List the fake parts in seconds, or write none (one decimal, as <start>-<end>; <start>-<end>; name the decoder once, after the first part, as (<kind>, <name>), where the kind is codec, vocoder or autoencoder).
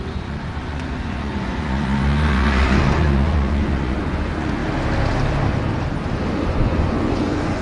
0.0-4.6 (vocoder, Vocos); 6.5-7.6